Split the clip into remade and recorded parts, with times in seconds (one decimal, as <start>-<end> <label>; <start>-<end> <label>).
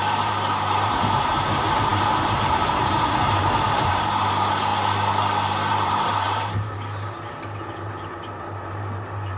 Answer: 0.0-4.7 remade; 4.7-5.7 recorded; 5.7-9.4 remade